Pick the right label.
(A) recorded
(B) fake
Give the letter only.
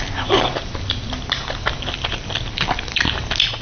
A